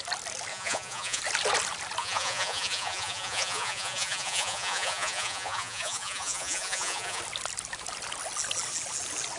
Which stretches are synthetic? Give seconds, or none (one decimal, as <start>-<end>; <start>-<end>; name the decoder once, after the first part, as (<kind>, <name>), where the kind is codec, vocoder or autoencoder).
0.5-1.2 (vocoder, Vocos); 2.0-7.2